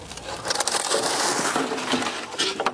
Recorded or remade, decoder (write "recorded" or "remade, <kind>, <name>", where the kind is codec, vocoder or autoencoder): recorded